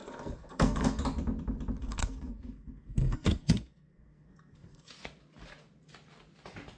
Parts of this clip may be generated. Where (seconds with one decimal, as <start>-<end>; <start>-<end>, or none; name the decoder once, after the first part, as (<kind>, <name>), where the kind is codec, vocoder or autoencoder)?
0.0-1.0 (codec, SNAC); 1.8-4.9